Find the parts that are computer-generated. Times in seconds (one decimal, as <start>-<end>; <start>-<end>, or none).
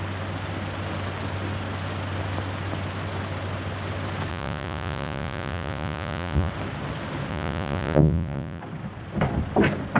4.3-6.5; 7.3-8.6